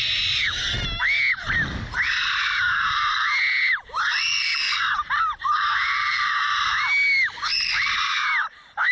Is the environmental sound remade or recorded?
recorded